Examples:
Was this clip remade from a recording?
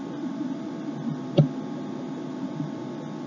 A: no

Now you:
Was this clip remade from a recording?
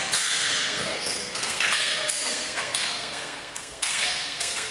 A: yes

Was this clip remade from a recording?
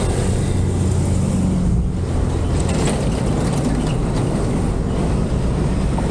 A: no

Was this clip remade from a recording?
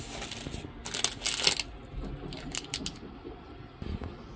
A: no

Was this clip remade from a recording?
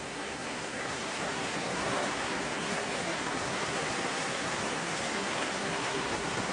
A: yes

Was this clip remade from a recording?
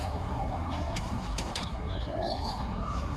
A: yes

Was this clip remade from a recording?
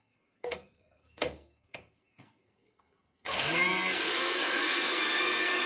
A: yes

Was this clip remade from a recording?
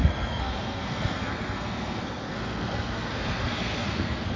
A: yes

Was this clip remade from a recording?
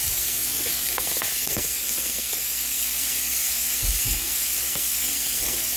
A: yes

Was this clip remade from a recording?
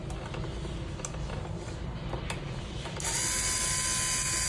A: no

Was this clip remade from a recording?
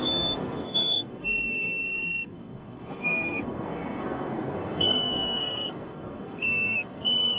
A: yes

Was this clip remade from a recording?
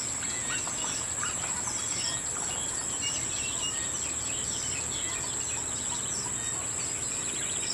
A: no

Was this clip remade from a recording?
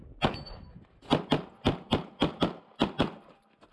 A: no